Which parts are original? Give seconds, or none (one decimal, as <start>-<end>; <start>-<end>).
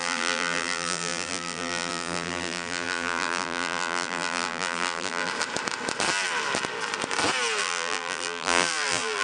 5.3-7.6